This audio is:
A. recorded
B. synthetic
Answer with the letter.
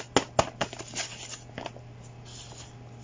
A